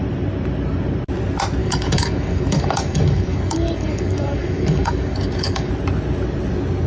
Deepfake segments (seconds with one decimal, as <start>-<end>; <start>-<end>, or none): 1.6-5.7

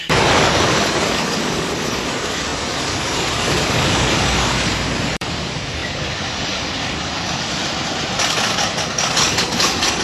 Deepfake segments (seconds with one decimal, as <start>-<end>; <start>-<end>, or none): 0.0-7.6; 8.3-10.0

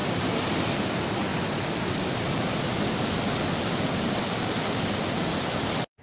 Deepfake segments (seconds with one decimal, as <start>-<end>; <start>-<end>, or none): none

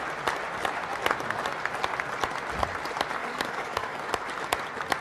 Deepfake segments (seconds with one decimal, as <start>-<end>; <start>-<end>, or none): 3.2-4.0

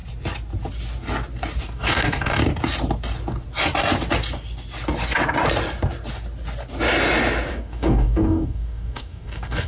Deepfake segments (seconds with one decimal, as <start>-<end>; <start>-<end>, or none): 1.6-2.4; 7.5-9.7

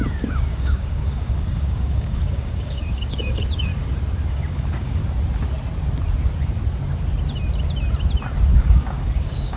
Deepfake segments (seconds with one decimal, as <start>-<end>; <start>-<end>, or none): 0.0-3.7; 4.3-5.0; 8.5-9.6

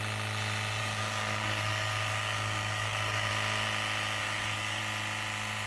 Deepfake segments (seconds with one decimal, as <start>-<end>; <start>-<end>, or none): 0.8-3.3; 4.2-4.8